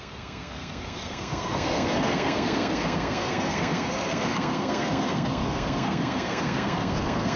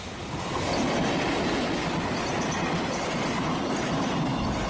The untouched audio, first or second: second